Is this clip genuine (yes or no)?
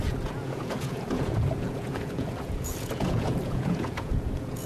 no